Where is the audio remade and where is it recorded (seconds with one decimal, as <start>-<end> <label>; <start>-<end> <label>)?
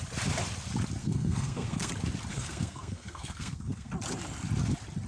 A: 0.0-1.0 recorded; 1.0-1.9 remade; 1.9-2.3 recorded; 2.3-3.9 remade; 3.9-5.1 recorded